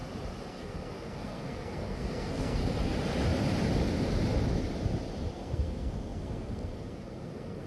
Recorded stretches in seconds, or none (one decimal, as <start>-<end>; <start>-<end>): 0.0-0.5; 2.6-5.3